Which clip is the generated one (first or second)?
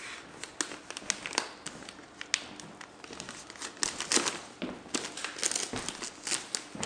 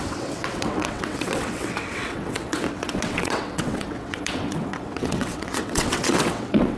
second